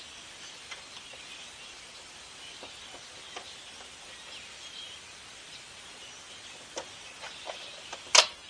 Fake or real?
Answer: real